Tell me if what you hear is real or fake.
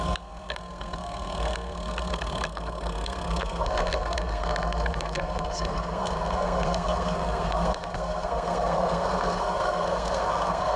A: fake